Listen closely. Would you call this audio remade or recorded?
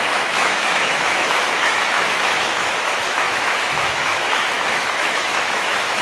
remade